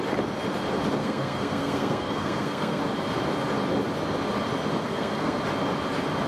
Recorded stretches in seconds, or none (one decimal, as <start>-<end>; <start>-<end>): 0.0-1.0; 2.8-4.8; 5.4-6.3